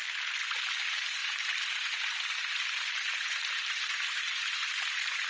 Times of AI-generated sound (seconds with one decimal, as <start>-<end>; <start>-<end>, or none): 0.5-5.3